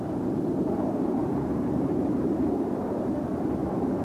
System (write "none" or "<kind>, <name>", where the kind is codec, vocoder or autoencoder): vocoder, BigVGAN v2